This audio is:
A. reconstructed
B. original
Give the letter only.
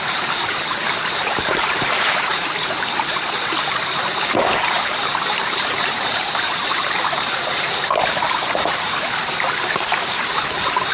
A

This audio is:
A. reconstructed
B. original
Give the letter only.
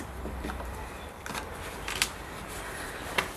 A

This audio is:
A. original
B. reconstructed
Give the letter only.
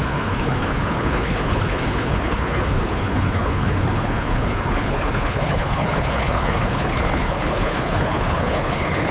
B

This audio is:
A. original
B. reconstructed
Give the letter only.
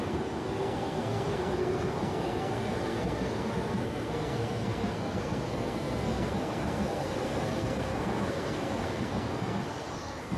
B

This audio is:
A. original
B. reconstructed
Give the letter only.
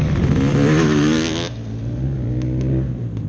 A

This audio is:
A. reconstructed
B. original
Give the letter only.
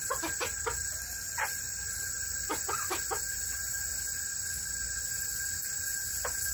B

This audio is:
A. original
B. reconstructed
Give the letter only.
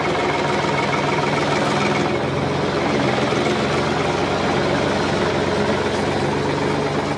A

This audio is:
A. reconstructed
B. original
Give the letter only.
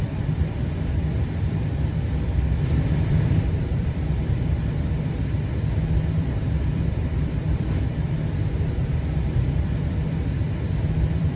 A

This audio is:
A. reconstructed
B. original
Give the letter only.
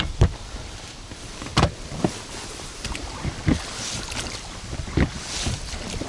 A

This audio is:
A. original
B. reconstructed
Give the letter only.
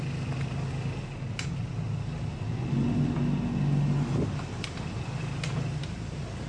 A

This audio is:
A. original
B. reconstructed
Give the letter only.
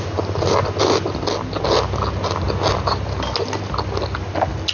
A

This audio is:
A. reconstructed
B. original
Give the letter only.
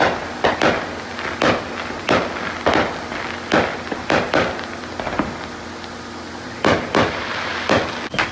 B